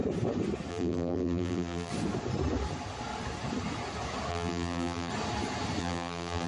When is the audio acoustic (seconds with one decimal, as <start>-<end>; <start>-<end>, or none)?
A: 0.0-0.7; 1.9-4.3; 5.1-5.8